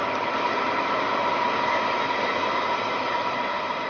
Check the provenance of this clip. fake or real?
real